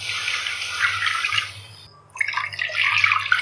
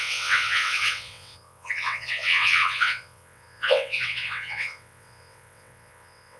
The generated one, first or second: second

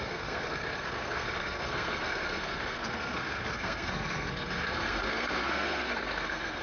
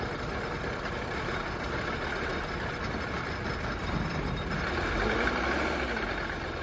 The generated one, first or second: first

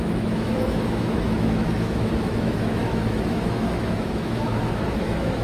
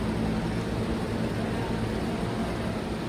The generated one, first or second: first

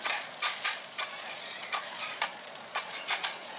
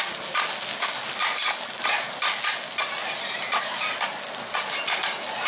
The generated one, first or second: first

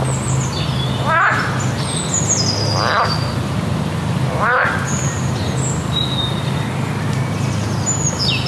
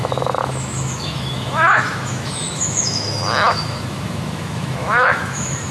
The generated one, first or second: second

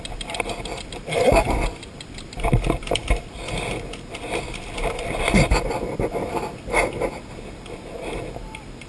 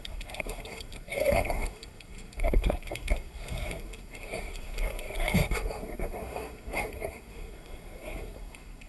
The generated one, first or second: second